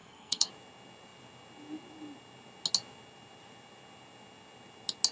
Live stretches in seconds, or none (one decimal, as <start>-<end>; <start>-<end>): 0.5-5.1